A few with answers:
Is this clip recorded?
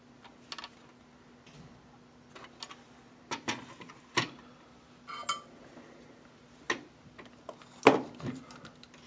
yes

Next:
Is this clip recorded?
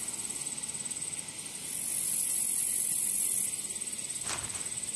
yes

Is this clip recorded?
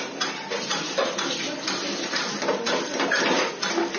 yes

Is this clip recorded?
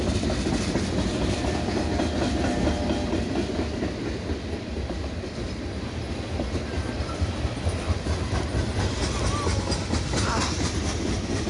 yes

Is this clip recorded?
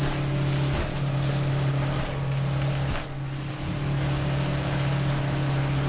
yes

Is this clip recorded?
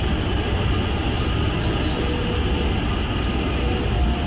yes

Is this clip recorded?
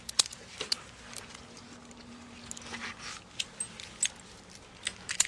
yes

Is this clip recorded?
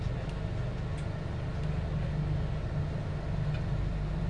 yes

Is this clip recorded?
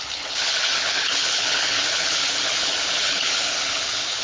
no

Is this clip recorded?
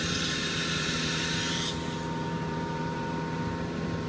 no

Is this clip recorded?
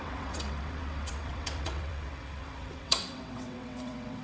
no